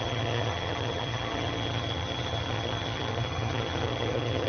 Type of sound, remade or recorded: remade